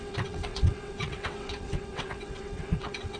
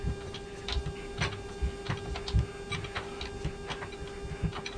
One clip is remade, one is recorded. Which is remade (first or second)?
first